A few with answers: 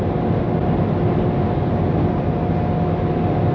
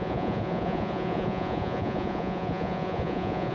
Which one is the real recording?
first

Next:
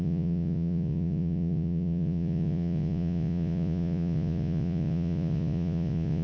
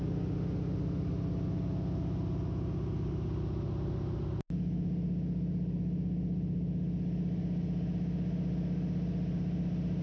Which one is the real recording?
second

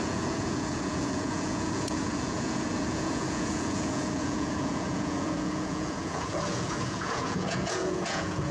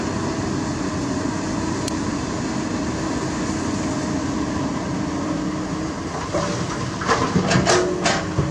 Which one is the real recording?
second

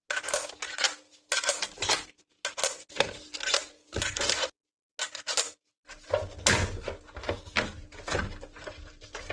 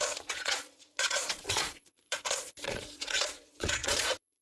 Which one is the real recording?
first